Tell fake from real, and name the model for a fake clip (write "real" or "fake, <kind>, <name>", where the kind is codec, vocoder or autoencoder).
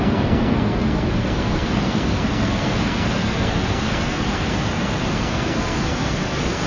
fake, codec, SNAC